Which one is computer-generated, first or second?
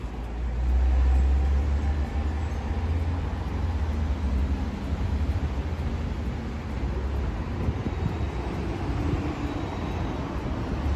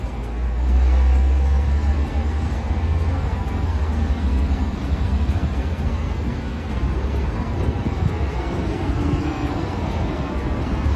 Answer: second